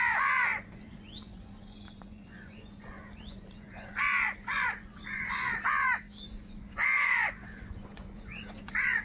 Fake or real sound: fake